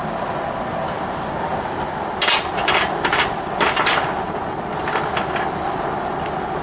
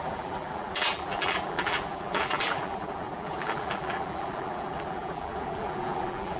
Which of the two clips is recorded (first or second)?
first